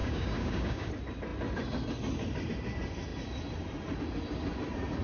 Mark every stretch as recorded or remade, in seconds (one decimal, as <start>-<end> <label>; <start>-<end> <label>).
0.0-0.9 remade; 0.9-5.0 recorded